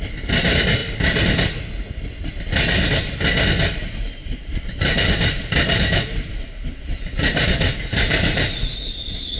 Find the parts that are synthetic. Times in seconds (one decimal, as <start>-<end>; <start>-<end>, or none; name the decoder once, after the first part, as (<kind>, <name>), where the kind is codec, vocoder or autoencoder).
4.0-8.6 (vocoder, BigVGAN v2)